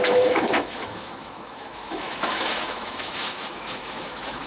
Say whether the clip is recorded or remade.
remade